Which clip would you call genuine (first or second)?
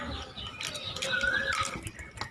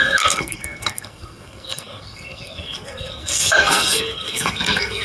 first